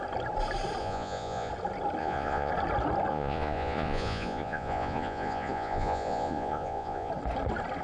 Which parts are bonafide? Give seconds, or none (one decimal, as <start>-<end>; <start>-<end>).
0.0-0.8; 1.5-2.0; 2.5-3.1; 7.1-7.8